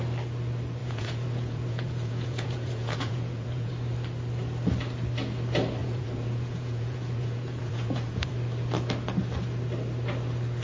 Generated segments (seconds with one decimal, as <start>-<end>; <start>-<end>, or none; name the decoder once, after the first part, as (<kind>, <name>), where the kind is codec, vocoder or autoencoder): 0.8-3.7 (vocoder, Vocos); 5.8-8.3

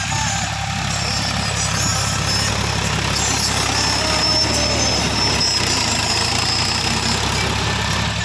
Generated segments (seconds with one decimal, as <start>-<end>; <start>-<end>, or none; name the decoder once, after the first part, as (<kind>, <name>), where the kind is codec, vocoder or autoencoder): none

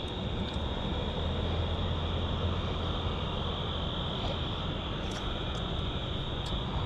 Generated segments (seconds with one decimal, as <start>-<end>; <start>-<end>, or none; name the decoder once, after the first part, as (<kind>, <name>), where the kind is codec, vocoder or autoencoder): 0.0-0.9 (vocoder, Vocos); 5.0-6.9

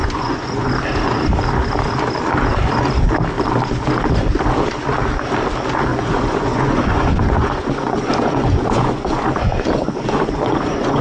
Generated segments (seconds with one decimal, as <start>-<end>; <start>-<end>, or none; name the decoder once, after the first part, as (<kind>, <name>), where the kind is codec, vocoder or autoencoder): 0.0-0.7 (vocoder, Vocos); 5.9-11.0

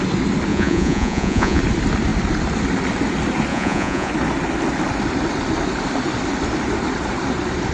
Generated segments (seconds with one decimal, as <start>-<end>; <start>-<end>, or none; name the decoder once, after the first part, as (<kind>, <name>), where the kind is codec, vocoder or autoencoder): 0.5-1.6 (vocoder, Vocos); 3.5-4.1